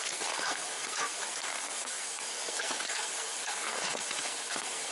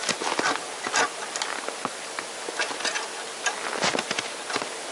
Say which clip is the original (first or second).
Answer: second